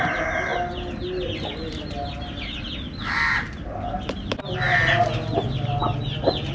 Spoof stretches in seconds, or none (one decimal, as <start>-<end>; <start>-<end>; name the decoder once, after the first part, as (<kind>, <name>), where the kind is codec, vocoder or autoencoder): none